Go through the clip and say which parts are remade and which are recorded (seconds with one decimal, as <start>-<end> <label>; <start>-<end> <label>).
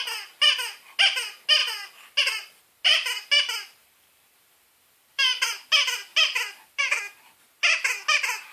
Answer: 0.0-3.8 recorded; 3.8-5.4 remade; 5.4-6.1 recorded; 6.1-7.0 remade; 7.0-8.5 recorded